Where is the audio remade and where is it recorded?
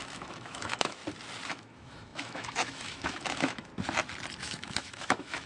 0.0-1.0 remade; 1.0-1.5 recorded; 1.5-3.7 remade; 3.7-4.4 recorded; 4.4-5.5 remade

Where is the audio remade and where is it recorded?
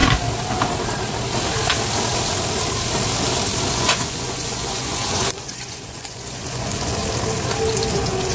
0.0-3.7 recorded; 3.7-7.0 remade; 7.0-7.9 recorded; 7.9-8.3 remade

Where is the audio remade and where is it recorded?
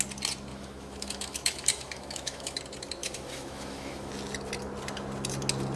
0.0-0.5 recorded; 0.5-2.6 remade; 2.6-3.0 recorded; 3.0-4.1 remade; 4.1-5.8 recorded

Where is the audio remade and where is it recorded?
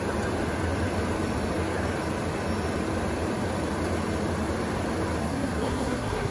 0.0-5.2 recorded; 5.2-6.3 remade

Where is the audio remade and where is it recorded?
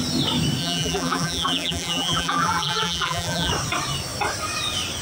0.0-0.6 recorded; 0.6-3.5 remade; 3.5-5.0 recorded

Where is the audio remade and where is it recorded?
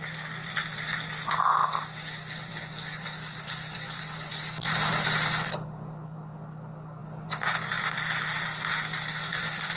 0.0-9.8 recorded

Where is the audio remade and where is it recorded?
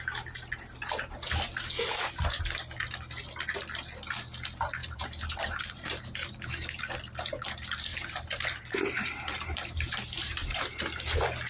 0.0-4.8 recorded; 4.8-6.8 remade; 6.8-7.9 recorded; 7.9-10.8 remade; 10.8-11.5 recorded